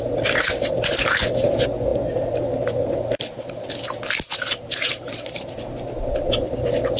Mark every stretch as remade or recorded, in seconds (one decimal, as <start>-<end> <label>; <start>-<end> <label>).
0.0-7.0 recorded